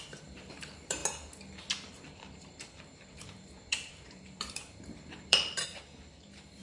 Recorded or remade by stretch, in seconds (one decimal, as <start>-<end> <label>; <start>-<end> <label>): 0.0-1.0 remade; 1.0-1.9 recorded; 1.9-6.6 remade